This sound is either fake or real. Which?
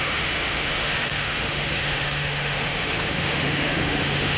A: fake